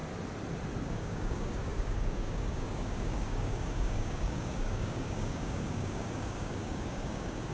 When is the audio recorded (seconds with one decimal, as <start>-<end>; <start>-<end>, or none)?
0.0-0.8